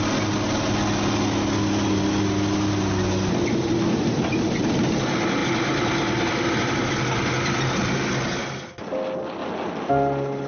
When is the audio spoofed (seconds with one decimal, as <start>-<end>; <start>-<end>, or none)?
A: none